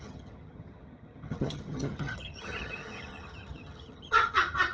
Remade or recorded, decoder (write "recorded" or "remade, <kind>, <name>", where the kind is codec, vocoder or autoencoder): remade, vocoder, HiFi-GAN